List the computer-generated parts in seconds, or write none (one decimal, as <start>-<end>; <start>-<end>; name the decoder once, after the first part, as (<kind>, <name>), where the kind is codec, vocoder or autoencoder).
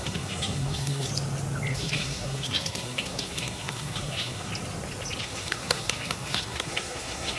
0.0-1.1 (codec, SNAC); 1.7-4.5; 5.2-7.4